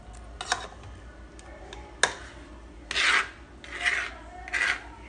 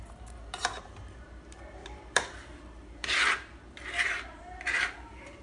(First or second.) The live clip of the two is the first